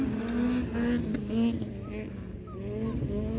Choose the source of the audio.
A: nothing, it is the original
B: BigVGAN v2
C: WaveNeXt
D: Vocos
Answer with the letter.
A